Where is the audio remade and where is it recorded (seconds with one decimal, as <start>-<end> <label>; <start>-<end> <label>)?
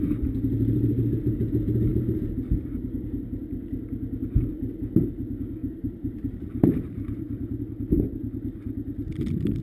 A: 0.0-1.9 recorded; 1.9-3.4 remade; 3.4-5.6 recorded; 5.6-7.6 remade; 7.6-9.6 recorded